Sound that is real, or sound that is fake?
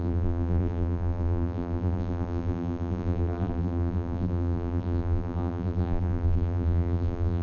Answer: fake